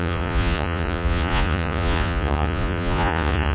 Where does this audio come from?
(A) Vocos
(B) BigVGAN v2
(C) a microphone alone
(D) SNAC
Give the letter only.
A